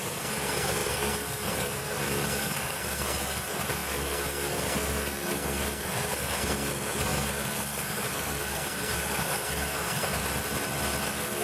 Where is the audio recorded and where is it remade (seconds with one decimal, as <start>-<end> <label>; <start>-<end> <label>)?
0.0-10.2 remade; 10.2-11.0 recorded; 11.0-11.4 remade